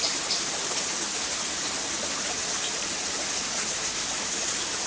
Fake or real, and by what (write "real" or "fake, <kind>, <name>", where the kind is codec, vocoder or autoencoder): real